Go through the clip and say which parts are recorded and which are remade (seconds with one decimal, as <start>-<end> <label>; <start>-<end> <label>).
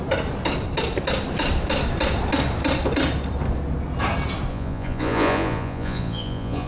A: 0.0-4.5 recorded; 4.5-6.7 remade